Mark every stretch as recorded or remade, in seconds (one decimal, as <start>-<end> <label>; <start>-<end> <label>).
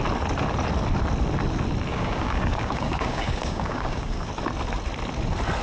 0.0-1.9 recorded; 1.9-4.3 remade; 4.3-5.6 recorded